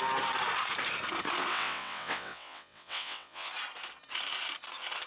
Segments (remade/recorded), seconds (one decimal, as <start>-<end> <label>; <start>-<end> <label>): 0.0-1.5 recorded; 1.5-3.5 remade; 3.5-5.1 recorded